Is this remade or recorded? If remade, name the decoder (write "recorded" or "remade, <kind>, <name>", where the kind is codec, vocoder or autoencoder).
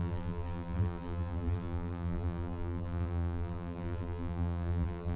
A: remade, vocoder, BigVGAN v2